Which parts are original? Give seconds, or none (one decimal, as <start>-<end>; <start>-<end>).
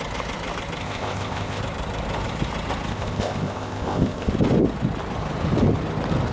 0.0-0.8; 1.6-2.9; 4.3-6.3